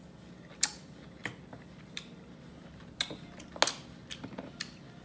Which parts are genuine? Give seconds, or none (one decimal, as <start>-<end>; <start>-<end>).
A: 0.0-5.0